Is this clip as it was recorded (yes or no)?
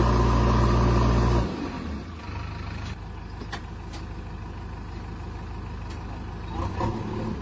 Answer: yes